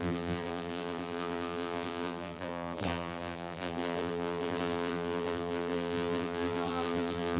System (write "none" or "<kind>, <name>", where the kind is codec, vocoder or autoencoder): vocoder, BigVGAN v2